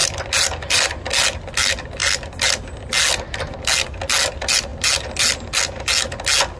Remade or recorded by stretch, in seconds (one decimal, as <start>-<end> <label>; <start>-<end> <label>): 0.0-6.6 recorded